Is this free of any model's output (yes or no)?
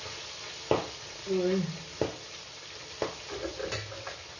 yes